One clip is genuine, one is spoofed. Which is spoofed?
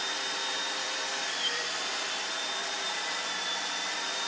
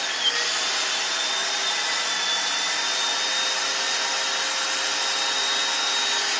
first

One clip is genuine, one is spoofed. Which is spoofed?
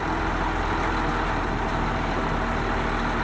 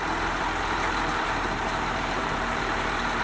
second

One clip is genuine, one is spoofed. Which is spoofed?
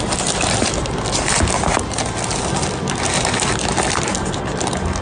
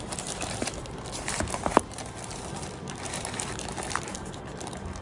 second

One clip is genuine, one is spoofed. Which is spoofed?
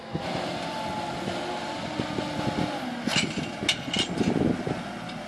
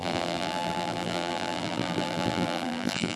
second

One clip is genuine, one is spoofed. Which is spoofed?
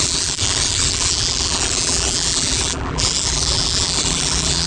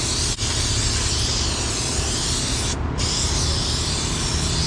first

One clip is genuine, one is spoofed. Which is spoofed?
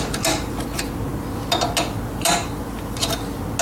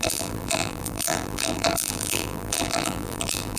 second